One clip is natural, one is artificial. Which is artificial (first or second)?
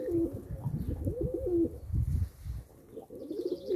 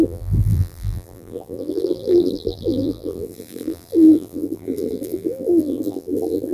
second